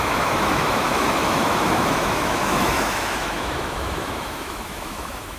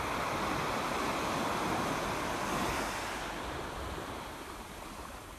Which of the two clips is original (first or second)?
second